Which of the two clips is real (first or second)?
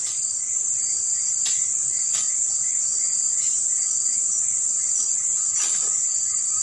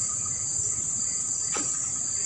first